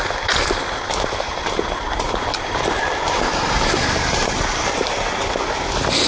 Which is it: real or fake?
real